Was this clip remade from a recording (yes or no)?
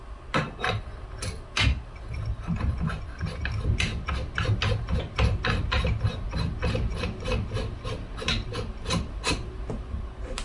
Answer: no